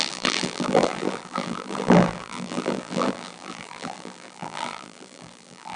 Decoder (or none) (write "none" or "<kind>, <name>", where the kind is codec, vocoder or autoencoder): vocoder, BigVGAN v2